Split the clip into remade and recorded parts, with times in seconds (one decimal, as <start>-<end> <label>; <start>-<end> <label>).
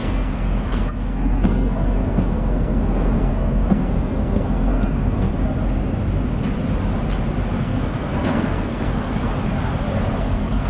0.0-5.3 remade; 5.3-7.6 recorded; 7.6-9.3 remade; 9.3-10.2 recorded; 10.2-10.7 remade